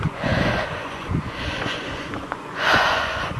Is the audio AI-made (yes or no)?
yes